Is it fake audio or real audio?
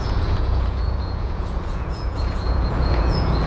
fake